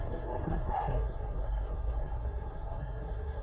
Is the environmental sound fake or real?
fake